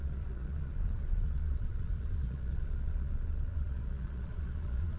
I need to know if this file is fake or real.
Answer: fake